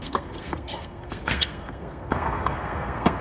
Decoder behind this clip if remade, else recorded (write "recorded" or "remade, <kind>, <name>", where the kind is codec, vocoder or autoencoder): remade, codec, SNAC